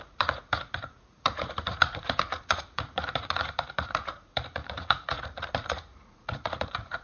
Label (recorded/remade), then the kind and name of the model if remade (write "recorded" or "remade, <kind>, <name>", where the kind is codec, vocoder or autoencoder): remade, vocoder, Vocos